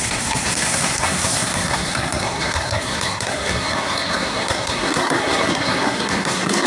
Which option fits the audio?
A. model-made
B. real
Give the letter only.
A